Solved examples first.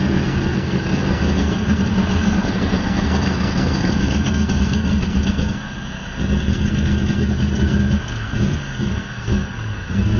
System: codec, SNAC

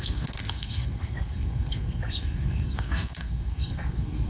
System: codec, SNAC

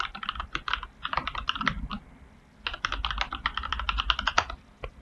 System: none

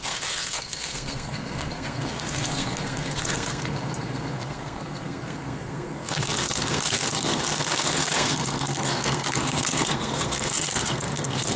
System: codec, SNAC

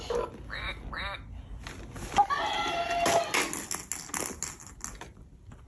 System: none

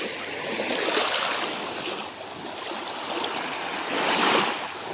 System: none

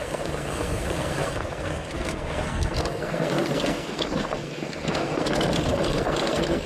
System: codec, SNAC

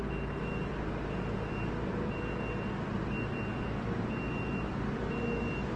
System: none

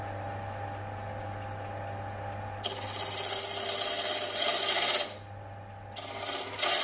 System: none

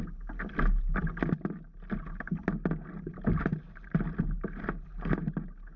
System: none